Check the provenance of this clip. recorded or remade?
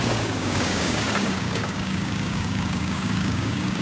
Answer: remade